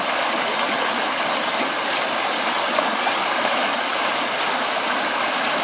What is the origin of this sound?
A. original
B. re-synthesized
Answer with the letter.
A